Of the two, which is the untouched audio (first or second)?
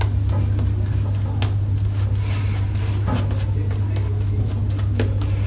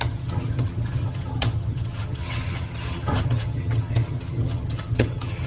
first